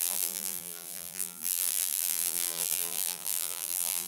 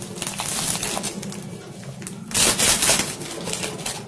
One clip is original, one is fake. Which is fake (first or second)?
first